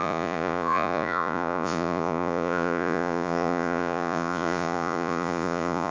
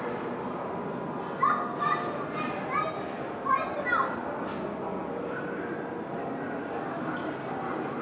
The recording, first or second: second